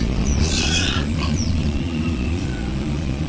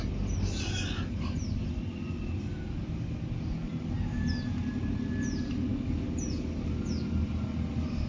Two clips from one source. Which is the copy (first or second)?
first